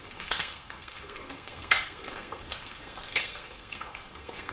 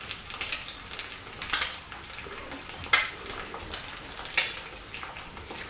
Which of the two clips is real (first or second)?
second